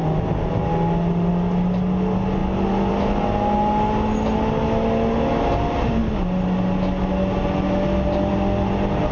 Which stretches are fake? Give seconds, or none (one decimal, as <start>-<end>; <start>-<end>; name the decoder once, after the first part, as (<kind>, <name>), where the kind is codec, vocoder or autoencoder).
none